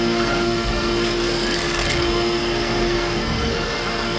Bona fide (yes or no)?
no